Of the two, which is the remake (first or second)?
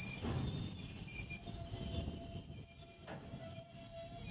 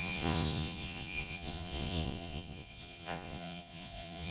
second